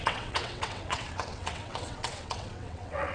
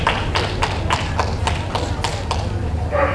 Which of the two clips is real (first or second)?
second